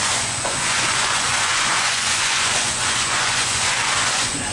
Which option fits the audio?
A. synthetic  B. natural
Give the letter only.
A